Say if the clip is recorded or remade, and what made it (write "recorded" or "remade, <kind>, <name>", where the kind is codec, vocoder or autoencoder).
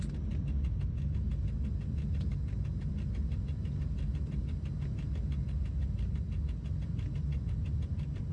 recorded